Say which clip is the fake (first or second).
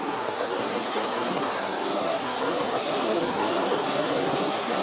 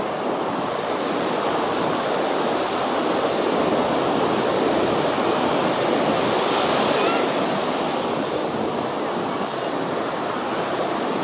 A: first